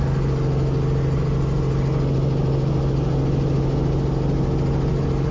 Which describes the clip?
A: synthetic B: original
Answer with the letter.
B